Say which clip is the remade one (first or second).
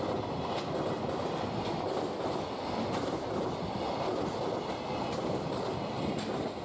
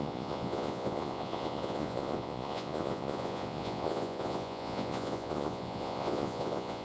second